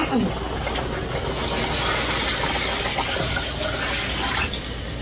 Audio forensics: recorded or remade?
recorded